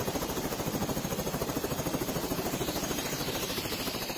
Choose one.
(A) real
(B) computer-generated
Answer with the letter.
B